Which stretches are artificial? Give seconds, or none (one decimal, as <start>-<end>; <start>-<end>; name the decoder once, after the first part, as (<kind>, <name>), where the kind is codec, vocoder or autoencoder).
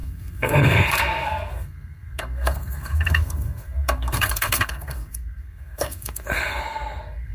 0.0-7.3 (codec, SNAC)